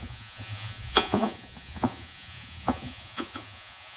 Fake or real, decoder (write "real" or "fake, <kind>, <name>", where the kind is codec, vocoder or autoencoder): fake, vocoder, Vocos